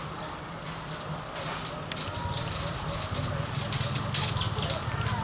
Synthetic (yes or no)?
no